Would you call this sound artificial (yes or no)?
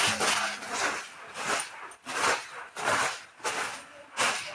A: no